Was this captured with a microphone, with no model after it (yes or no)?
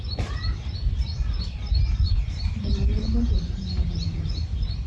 yes